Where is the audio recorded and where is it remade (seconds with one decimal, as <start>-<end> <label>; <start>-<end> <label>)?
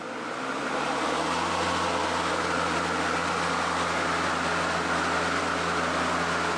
0.0-6.6 recorded